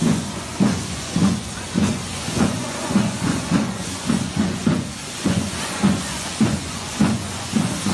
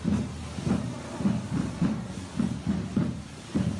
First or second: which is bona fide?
second